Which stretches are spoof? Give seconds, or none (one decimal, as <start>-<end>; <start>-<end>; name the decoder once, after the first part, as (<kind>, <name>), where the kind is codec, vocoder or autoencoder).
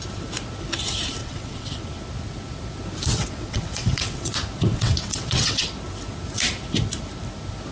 1.2-1.8 (vocoder, WaveNeXt); 3.1-4.3; 4.7-5.7